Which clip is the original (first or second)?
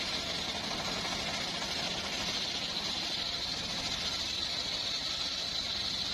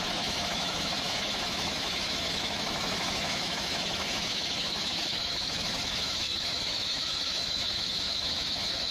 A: first